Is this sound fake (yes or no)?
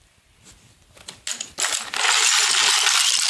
no